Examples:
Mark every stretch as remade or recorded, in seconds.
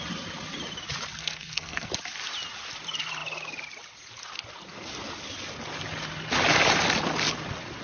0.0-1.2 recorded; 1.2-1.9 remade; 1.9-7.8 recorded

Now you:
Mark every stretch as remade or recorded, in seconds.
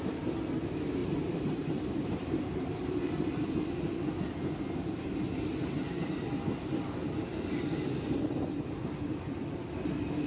0.0-1.0 recorded; 1.0-3.8 remade; 3.8-7.3 recorded; 7.3-7.8 remade; 7.8-10.3 recorded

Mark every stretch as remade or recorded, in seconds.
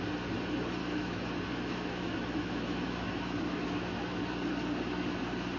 0.0-0.8 recorded; 0.8-4.2 remade; 4.2-5.6 recorded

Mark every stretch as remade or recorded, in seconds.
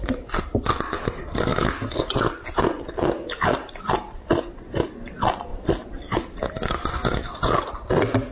0.0-5.5 recorded; 5.5-6.7 remade; 6.7-8.3 recorded